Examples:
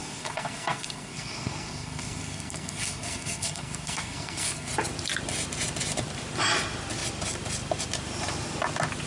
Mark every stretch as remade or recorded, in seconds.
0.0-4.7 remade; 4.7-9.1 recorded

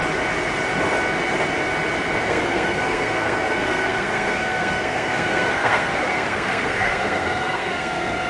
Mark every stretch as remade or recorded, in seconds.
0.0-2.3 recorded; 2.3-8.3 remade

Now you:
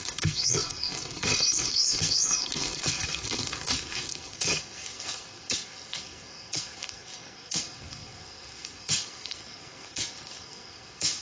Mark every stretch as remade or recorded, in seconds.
0.0-11.2 remade